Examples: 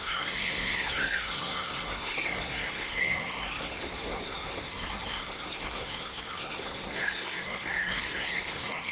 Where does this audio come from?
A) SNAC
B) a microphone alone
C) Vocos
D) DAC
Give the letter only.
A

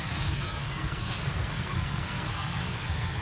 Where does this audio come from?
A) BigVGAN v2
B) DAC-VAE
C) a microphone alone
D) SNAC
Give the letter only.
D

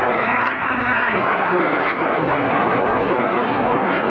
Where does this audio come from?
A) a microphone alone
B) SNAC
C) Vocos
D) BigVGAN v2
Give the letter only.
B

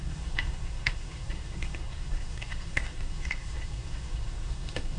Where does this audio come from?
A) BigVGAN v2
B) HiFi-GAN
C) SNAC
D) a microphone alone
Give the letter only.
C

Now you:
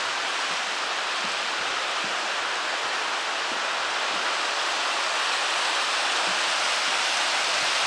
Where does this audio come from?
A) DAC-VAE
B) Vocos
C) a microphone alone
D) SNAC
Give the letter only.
C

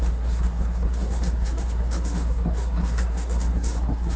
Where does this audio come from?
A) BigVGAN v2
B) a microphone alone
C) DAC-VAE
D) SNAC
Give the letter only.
D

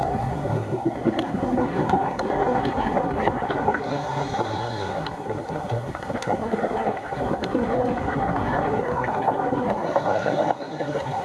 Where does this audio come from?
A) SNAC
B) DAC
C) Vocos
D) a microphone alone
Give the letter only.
A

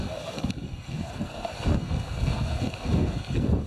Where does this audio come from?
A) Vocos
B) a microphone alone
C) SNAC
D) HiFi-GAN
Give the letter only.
C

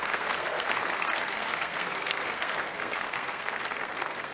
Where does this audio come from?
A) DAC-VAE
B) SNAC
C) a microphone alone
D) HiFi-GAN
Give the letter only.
B